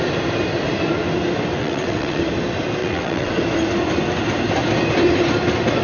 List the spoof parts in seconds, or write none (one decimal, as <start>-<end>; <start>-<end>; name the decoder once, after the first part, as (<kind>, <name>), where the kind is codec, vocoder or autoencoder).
1.6-2.2 (vocoder, WaveNeXt); 2.8-3.3